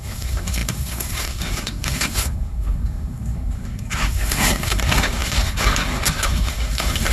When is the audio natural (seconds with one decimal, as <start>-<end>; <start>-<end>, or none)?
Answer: none

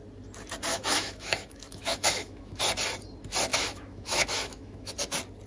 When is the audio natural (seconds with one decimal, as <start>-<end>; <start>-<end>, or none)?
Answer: 0.0-0.7; 2.6-3.5; 4.9-5.5

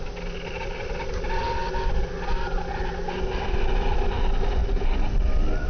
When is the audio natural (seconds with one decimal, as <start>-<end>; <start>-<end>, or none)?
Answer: 0.0-5.7

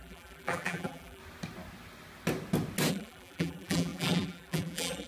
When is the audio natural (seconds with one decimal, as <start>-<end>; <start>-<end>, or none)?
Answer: 1.2-2.9

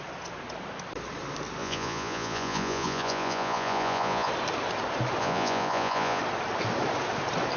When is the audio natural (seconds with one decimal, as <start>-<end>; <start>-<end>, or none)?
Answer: 0.0-1.6; 4.3-5.2; 6.2-7.6

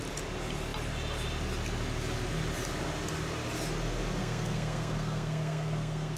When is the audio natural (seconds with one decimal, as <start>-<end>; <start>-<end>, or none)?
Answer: 0.0-4.2